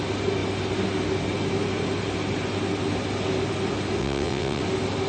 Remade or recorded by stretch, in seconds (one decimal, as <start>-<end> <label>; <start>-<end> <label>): 0.0-4.0 recorded; 4.0-4.6 remade; 4.6-5.1 recorded